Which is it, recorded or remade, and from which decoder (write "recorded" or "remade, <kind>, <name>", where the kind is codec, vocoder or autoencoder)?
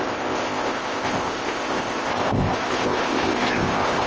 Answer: remade, codec, ZipCodec